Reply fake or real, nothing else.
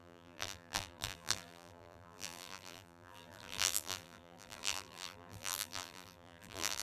fake